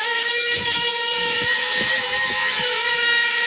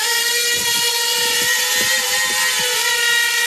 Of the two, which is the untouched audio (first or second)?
second